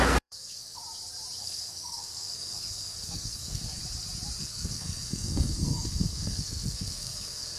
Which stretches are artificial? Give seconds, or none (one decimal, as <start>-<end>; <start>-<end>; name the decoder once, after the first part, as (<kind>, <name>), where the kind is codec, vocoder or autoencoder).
0.0-0.8 (codec, SNAC); 1.4-3.8; 4.4-7.6